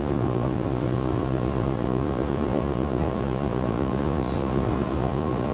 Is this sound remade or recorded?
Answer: remade